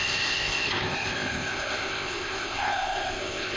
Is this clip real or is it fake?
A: fake